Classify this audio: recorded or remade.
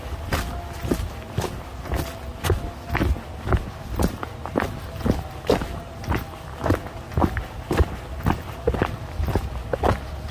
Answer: recorded